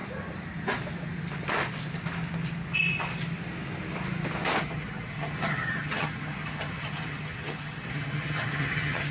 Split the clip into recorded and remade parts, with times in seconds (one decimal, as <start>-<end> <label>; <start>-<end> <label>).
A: 0.0-4.6 recorded; 4.6-9.1 remade